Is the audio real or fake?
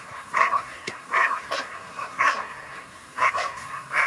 fake